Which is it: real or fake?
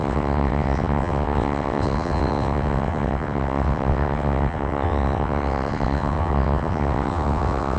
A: fake